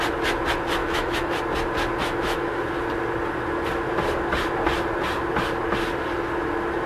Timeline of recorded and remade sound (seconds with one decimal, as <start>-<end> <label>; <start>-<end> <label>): 0.0-0.8 recorded; 0.8-1.4 remade; 1.4-2.0 recorded; 2.0-2.6 remade; 2.6-6.9 recorded